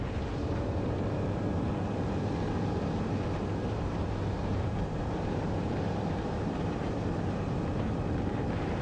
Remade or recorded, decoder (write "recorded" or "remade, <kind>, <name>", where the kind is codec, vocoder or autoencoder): remade, vocoder, BigVGAN v2